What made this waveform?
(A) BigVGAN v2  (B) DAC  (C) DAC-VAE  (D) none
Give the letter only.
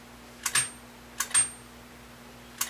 D